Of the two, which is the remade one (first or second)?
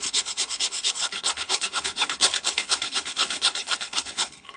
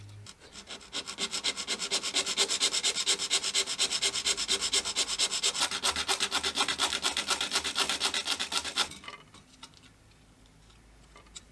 first